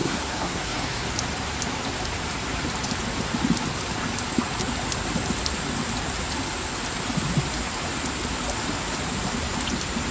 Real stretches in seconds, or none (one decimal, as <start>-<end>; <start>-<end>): 1.1-10.1